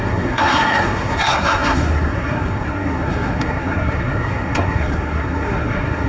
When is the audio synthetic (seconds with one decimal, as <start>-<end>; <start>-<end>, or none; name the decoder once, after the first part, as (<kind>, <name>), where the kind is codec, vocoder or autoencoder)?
0.0-6.1 (codec, SNAC)